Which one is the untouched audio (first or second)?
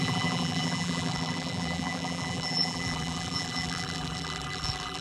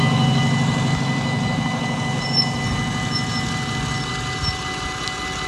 second